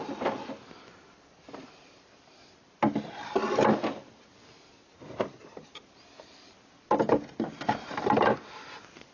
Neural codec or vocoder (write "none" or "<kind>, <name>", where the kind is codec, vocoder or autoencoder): none